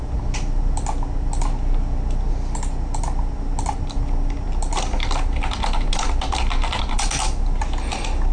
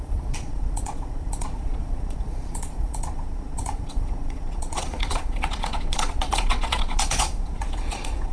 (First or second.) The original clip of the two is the first